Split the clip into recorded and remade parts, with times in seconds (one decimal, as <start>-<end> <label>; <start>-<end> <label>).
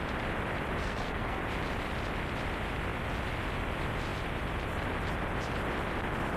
0.0-0.8 recorded; 0.8-1.4 remade; 1.4-6.4 recorded